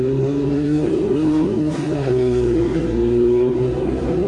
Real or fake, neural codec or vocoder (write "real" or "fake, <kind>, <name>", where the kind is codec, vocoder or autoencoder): fake, codec, SNAC